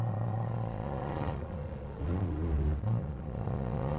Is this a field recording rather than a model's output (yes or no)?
no